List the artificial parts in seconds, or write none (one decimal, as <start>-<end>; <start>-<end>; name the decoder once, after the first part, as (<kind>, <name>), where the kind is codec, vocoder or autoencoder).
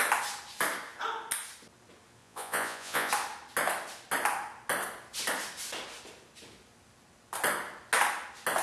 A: 2.2-3.1 (vocoder, Vocos)